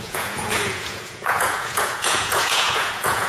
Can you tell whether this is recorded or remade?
remade